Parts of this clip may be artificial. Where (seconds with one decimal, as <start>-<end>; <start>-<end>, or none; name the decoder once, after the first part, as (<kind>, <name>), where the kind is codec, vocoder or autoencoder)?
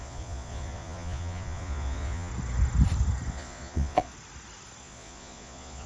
0.0-2.3 (vocoder, Vocos); 3.3-4.1; 4.8-5.9